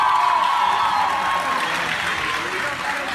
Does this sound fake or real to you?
real